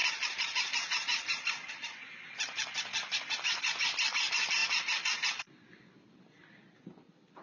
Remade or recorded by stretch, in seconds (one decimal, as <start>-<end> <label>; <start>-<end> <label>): 0.0-7.4 recorded

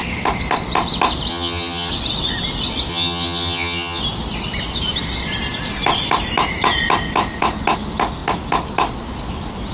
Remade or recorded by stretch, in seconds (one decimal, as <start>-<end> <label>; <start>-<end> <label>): 0.0-1.3 recorded; 1.3-1.9 remade; 1.9-2.9 recorded; 2.9-4.0 remade; 4.0-9.7 recorded

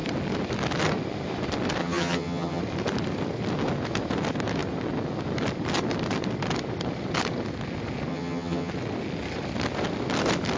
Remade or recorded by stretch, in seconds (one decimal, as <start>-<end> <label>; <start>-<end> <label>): 0.0-1.8 recorded; 1.8-2.6 remade; 2.6-8.1 recorded; 8.1-8.7 remade; 8.7-10.6 recorded

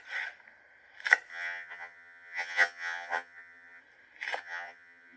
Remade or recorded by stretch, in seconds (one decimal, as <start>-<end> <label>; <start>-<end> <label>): 0.0-1.3 recorded; 1.3-3.8 remade; 3.8-4.4 recorded; 4.4-5.2 remade